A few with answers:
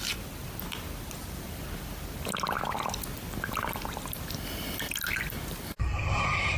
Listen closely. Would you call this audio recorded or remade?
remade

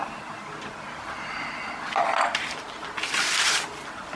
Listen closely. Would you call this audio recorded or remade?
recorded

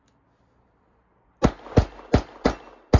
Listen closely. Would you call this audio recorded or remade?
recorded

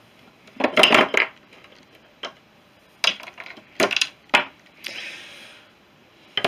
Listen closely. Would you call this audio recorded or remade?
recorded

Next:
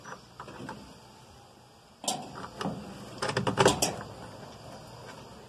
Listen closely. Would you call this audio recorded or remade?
recorded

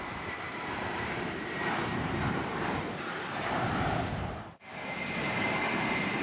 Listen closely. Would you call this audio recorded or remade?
remade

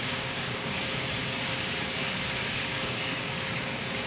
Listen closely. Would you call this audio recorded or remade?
remade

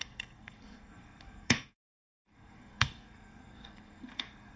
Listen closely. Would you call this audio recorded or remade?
remade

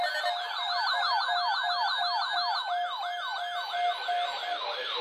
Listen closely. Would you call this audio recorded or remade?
recorded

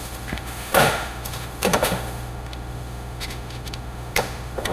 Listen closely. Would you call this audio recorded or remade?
remade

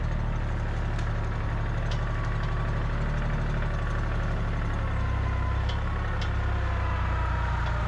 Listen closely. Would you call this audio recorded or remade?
recorded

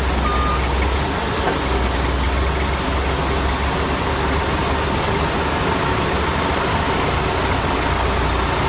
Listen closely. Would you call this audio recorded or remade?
recorded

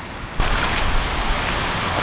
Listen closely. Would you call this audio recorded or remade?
recorded